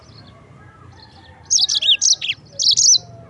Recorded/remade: recorded